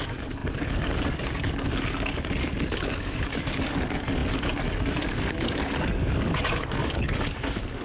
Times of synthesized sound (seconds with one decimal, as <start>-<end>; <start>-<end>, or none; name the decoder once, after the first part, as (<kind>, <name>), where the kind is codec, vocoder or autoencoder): 0.0-7.8 (codec, DAC)